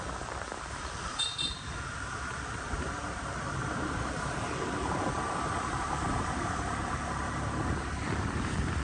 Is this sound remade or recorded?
remade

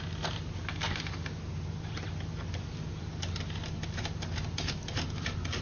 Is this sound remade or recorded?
recorded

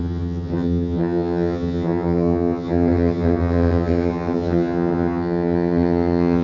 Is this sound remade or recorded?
remade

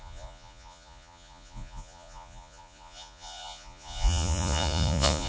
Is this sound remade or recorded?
remade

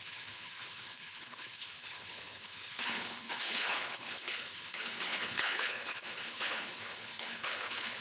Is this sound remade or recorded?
remade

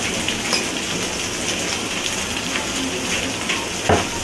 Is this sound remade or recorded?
recorded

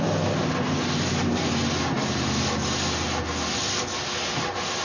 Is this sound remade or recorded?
recorded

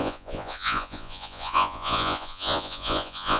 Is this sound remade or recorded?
remade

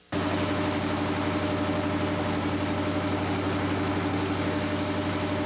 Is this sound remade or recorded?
recorded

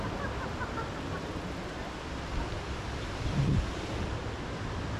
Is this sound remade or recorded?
recorded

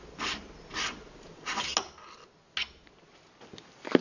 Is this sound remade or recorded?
recorded